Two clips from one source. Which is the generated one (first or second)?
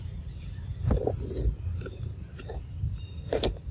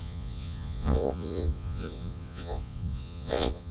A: second